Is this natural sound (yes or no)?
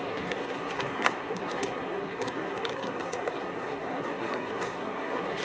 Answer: no